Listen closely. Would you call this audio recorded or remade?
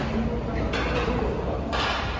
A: recorded